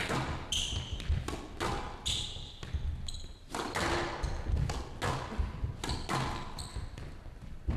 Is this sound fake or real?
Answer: real